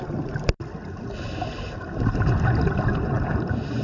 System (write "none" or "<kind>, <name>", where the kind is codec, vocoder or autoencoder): none